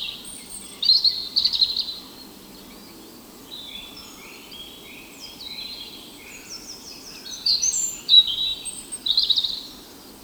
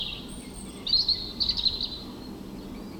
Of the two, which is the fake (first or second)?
first